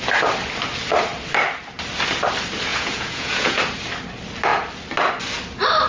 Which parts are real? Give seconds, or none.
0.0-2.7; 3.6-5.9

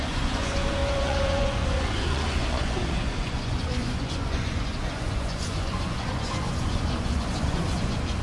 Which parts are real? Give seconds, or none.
none

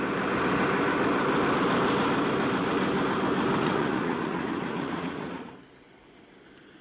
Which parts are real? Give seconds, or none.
0.0-3.6; 5.5-6.8

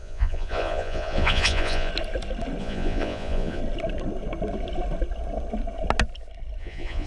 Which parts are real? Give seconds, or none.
1.9-2.6; 3.6-6.6